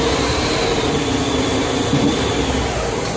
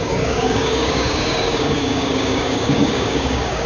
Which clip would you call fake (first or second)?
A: second